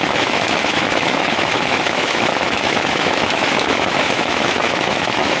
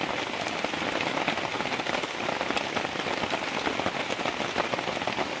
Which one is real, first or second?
second